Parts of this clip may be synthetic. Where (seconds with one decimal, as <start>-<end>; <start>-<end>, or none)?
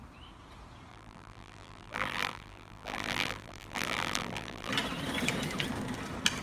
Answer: 0.9-4.7